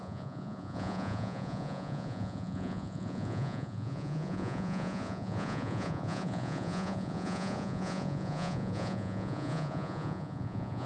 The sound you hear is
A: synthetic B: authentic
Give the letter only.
A